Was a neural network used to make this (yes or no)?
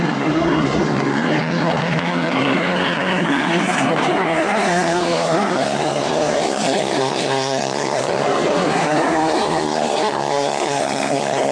yes